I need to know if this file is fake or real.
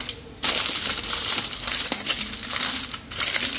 real